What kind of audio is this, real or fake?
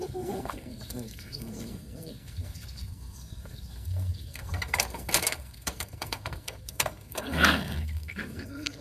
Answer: fake